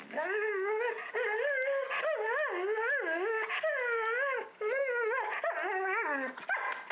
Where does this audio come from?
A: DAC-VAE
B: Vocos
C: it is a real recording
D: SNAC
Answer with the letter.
C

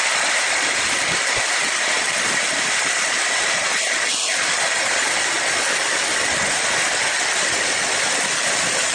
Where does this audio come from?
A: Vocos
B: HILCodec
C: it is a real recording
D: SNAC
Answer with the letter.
C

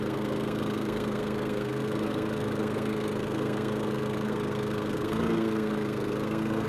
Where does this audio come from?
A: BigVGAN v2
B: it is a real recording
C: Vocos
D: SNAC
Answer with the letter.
D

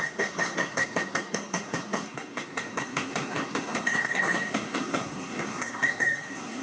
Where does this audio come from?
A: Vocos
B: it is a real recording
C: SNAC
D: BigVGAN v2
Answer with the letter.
C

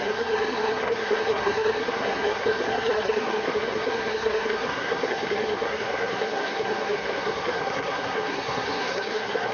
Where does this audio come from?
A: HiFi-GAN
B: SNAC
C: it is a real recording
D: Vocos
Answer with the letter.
B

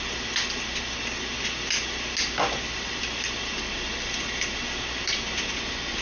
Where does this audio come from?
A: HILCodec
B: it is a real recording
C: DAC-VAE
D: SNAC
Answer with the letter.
B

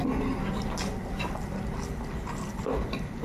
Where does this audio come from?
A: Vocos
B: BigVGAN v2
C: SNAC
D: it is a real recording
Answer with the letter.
D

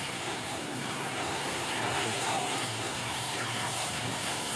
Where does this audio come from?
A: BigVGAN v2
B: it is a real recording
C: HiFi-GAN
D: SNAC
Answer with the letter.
D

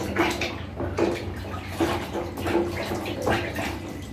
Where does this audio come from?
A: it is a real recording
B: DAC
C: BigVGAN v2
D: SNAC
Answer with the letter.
A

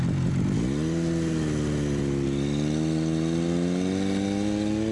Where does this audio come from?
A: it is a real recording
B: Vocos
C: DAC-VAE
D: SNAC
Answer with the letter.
A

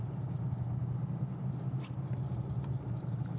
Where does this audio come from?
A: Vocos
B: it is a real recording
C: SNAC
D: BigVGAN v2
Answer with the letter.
B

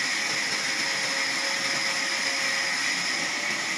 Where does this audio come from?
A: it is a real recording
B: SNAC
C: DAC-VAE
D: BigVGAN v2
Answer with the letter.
A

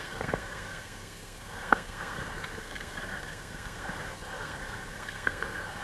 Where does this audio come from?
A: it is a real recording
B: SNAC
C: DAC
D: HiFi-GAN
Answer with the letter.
B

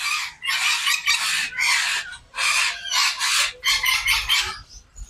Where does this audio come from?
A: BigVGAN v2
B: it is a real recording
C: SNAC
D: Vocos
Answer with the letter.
B